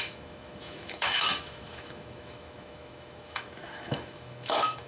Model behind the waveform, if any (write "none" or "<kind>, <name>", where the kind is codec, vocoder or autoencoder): autoencoder, DAC-VAE